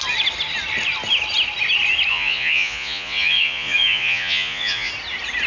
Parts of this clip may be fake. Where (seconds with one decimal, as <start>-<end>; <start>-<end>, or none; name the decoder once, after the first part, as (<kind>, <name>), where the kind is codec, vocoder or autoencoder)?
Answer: 2.1-4.9 (vocoder, Vocos)